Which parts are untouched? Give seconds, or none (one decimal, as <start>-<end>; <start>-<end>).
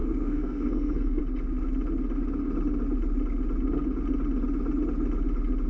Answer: 1.2-5.7